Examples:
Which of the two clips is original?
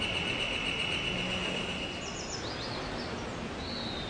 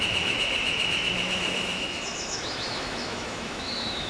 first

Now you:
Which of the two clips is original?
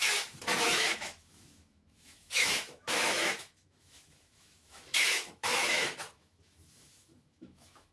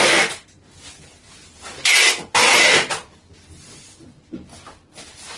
second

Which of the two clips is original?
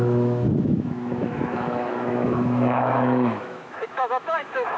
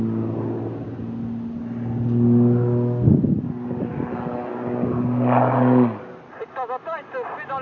second